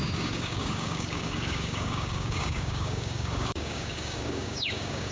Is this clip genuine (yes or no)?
no